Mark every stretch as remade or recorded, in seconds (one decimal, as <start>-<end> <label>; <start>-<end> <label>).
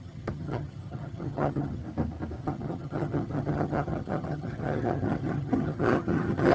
0.0-1.8 remade; 1.8-2.4 recorded; 2.4-6.5 remade